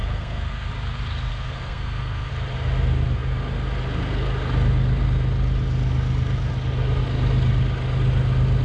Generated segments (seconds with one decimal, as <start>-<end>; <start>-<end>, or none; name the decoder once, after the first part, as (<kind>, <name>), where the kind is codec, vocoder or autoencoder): 0.0-0.7 (codec, SNAC); 1.3-2.3